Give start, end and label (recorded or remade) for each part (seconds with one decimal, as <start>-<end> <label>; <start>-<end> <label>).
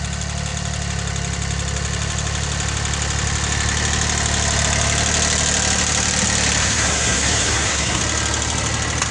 0.0-6.6 recorded; 6.6-8.0 remade; 8.0-9.1 recorded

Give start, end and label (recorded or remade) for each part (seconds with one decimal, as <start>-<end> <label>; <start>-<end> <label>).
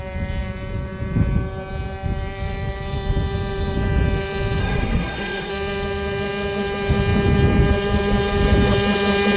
0.0-4.6 recorded; 4.6-5.5 remade; 5.5-9.4 recorded